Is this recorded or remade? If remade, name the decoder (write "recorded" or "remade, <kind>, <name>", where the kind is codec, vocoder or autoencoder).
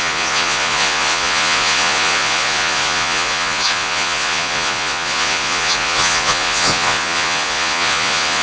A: remade, vocoder, Vocos